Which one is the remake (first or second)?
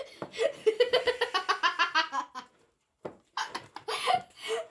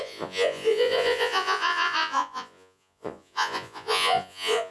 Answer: second